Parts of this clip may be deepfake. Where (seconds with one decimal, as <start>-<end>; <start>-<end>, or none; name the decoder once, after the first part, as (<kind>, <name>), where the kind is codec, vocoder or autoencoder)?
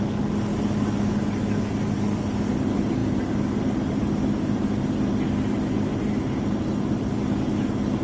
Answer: none